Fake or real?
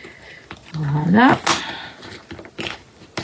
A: real